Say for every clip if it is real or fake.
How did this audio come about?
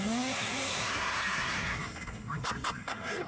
fake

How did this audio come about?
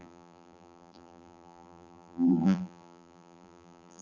fake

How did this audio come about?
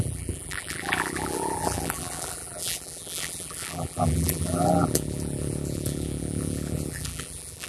fake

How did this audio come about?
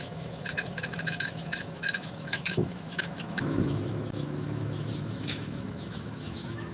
fake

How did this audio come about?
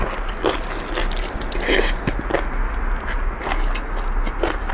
real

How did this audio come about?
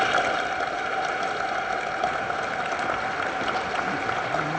real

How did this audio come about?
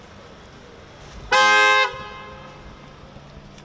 real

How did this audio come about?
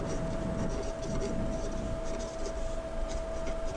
real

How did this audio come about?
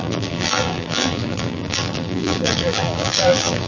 fake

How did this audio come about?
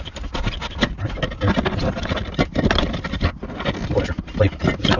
real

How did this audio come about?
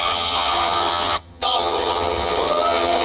fake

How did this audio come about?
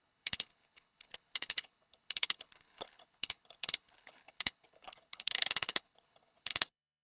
fake